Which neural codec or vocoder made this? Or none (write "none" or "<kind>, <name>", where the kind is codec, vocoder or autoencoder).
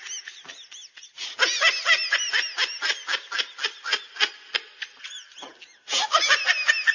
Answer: none